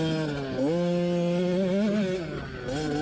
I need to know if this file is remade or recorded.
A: recorded